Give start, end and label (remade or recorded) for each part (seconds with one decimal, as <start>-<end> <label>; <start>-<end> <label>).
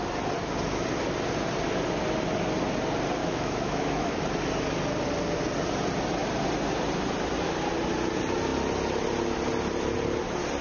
0.0-3.2 recorded; 3.2-4.2 remade; 4.2-10.6 recorded